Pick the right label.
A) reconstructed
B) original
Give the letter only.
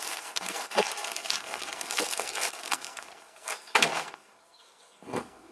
A